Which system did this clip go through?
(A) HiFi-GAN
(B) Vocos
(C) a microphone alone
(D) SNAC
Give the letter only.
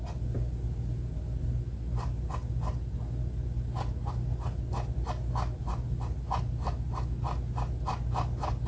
C